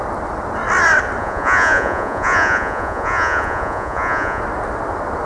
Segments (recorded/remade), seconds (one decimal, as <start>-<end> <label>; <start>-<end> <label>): 0.0-1.2 recorded; 1.2-4.4 remade; 4.4-5.3 recorded